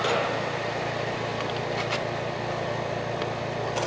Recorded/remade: recorded